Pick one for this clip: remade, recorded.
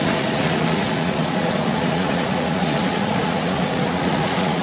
remade